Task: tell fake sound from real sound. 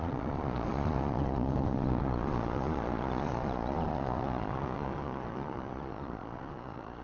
fake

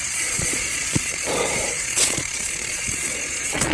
fake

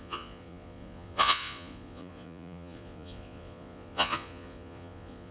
fake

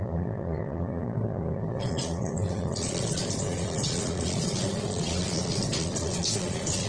fake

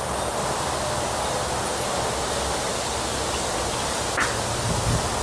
real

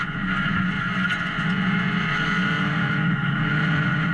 fake